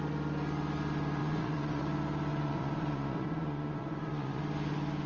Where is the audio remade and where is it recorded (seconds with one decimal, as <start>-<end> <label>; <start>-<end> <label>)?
0.0-1.2 recorded; 1.2-1.8 remade; 1.8-2.3 recorded; 2.3-4.4 remade; 4.4-5.1 recorded